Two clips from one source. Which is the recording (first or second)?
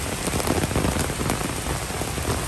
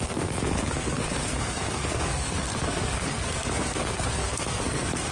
first